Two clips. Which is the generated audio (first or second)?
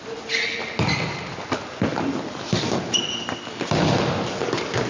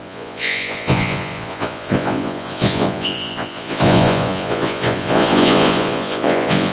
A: second